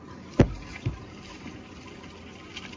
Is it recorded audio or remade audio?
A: recorded